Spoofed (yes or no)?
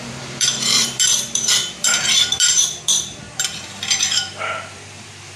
yes